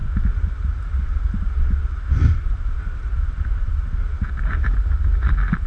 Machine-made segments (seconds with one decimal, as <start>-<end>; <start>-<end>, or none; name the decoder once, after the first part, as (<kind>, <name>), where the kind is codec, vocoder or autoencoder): none